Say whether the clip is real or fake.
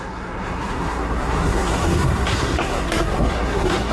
fake